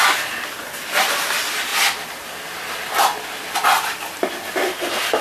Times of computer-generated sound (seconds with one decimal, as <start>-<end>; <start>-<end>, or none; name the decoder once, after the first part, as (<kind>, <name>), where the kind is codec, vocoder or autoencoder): none